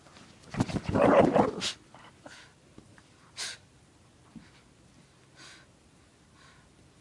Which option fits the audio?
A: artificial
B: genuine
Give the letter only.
B